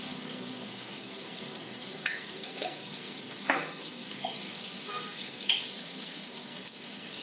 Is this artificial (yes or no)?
yes